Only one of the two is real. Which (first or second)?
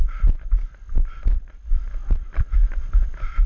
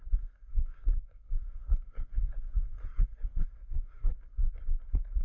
first